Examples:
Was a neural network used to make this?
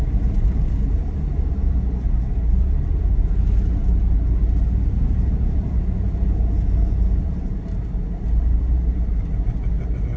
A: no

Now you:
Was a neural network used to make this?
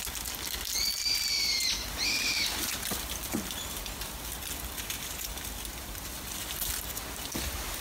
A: no